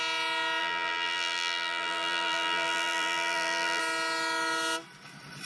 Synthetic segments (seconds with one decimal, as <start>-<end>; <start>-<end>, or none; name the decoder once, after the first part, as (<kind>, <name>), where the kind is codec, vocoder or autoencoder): 0.6-3.8 (vocoder, BigVGAN v2)